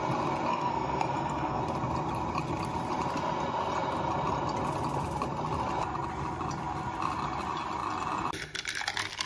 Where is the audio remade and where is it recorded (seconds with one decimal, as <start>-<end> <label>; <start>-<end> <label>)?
0.0-0.5 recorded; 0.5-1.6 remade; 1.6-9.3 recorded